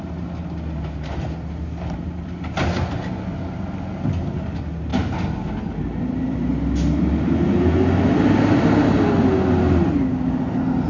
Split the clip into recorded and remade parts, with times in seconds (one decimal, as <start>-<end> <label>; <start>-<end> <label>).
0.0-10.9 recorded